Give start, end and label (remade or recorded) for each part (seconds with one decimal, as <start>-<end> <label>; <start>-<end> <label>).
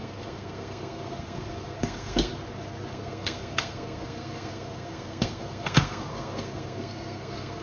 0.0-2.3 remade; 2.3-2.9 recorded; 2.9-7.6 remade